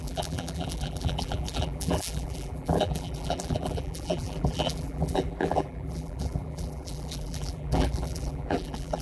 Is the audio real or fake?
fake